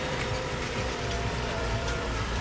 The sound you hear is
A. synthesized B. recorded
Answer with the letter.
A